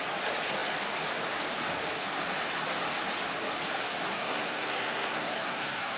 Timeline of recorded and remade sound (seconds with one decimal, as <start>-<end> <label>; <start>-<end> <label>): 0.0-4.1 recorded; 4.1-6.0 remade